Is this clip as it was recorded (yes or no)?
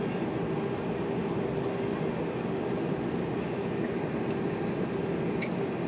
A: yes